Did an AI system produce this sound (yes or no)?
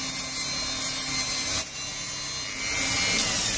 no